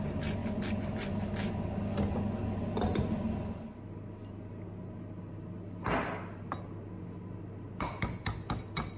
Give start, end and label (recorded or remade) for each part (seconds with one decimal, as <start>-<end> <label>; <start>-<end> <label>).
0.0-9.0 recorded